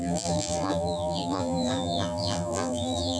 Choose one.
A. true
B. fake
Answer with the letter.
B